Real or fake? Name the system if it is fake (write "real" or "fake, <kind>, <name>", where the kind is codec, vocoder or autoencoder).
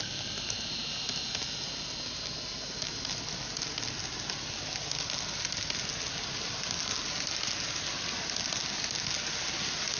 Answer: real